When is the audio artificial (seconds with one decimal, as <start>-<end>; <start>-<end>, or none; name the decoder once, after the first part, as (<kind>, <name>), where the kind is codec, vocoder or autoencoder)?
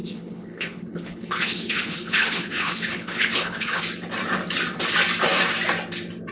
0.0-3.8 (codec, HILCodec)